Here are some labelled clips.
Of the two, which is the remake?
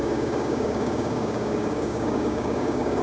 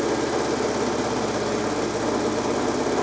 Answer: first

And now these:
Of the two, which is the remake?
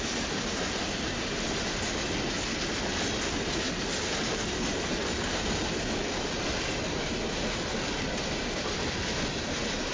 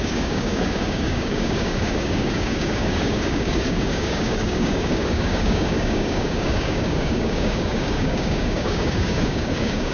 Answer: second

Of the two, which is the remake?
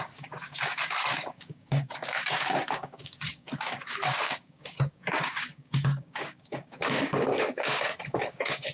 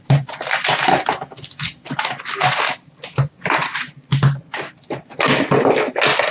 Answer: first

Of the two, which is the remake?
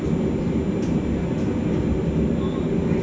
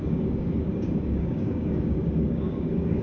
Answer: second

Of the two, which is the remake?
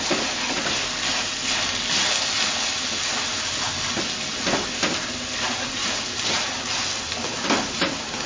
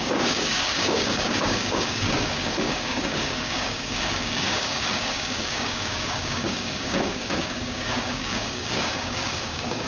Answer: second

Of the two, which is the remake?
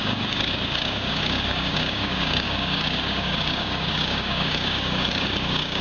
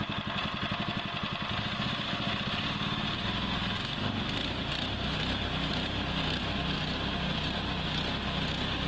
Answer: first